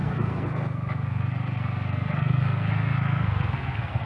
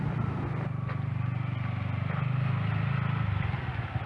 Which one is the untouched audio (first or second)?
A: second